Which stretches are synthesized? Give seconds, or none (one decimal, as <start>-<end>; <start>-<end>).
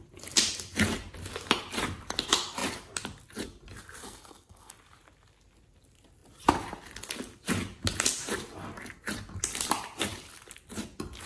4.0-4.7